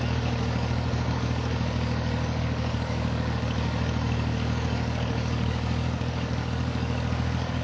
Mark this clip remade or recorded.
remade